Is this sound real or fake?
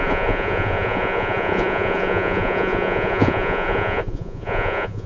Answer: fake